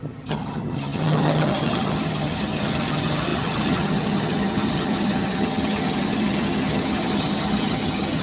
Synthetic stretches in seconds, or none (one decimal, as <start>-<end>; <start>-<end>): 0.0-8.2